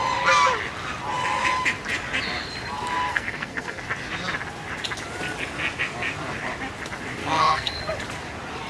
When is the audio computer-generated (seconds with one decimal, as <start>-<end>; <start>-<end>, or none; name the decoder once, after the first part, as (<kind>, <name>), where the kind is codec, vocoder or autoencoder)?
3.1-3.8 (codec, SNAC); 7.2-7.8